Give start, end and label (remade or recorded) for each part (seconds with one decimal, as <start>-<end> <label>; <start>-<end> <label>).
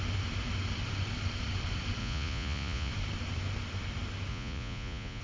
0.0-2.0 recorded; 2.0-2.9 remade; 2.9-4.3 recorded; 4.3-5.2 remade